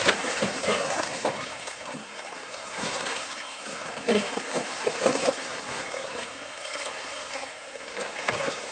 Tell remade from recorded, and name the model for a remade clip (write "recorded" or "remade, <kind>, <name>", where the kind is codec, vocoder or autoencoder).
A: remade, codec, SNAC